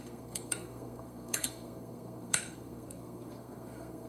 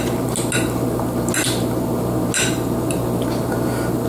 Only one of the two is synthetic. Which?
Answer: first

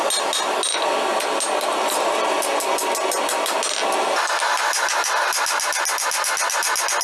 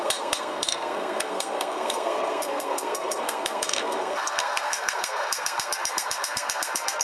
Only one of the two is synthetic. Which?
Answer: second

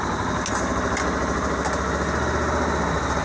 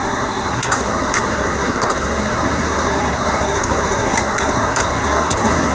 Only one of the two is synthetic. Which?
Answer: second